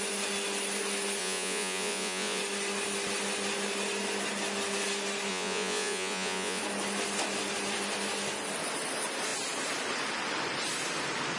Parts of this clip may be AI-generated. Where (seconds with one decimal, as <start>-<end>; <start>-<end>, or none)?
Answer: 1.2-2.4; 5.3-6.6